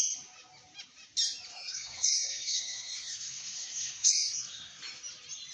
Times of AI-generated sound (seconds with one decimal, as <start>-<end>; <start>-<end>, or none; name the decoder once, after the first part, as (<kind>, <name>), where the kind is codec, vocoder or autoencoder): 1.5-4.8 (codec, SNAC)